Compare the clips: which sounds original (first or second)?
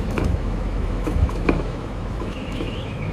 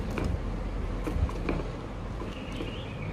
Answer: second